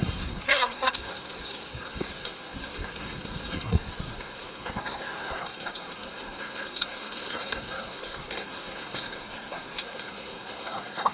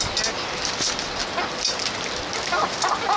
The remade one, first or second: first